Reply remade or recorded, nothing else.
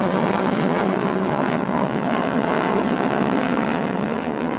remade